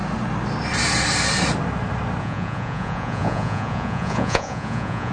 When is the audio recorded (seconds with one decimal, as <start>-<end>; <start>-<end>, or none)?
0.0-2.2